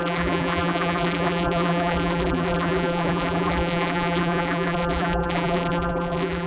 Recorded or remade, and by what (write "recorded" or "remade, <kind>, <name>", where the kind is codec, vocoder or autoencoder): remade, vocoder, BigVGAN v2